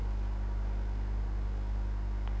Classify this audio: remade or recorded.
recorded